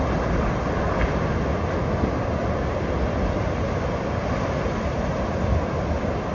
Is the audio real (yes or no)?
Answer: yes